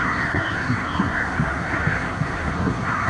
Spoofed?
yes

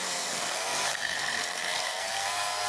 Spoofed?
yes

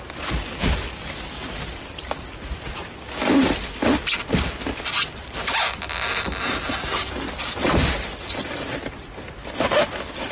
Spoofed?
no